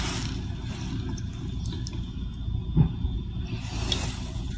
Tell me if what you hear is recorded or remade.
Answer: recorded